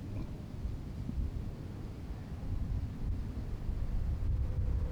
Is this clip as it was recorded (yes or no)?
yes